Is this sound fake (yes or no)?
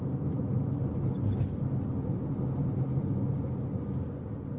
no